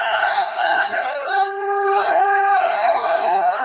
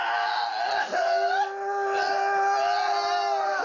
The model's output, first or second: first